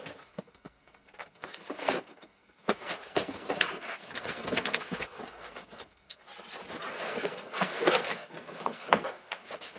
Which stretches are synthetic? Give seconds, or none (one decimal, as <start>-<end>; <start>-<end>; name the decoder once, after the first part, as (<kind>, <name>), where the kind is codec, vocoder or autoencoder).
0.0-6.2 (codec, SNAC); 6.9-9.8